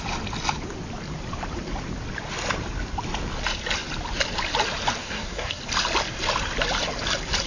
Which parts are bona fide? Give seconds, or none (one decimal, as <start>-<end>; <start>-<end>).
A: 0.0-5.0; 5.6-7.5